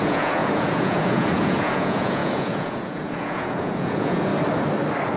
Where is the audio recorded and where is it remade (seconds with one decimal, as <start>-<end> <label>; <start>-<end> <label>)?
0.0-4.3 remade; 4.3-5.2 recorded